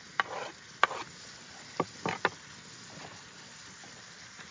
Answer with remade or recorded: recorded